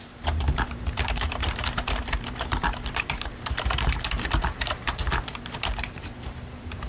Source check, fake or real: fake